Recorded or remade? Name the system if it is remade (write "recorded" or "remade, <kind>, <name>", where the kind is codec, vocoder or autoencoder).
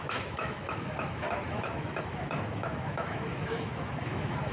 remade, autoencoder, DAC-VAE